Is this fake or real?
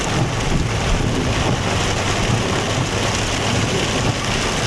real